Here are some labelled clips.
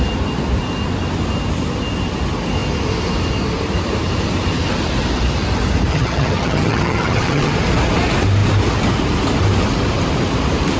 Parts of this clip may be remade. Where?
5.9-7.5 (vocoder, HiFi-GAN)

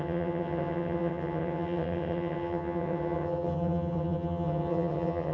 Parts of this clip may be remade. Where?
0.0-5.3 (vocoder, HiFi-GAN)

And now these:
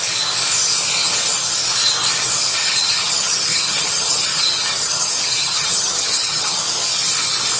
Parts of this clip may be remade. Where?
2.6-6.6 (vocoder, HiFi-GAN)

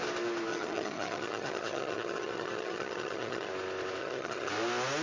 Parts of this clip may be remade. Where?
0.5-3.5 (vocoder, HiFi-GAN); 4.0-4.5

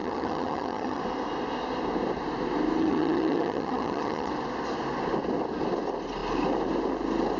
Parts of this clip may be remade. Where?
0.0-1.0 (vocoder, HiFi-GAN); 2.8-4.3